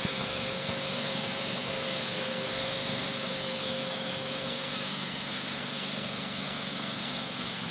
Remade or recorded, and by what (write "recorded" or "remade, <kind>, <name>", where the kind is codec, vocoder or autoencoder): remade, codec, SNAC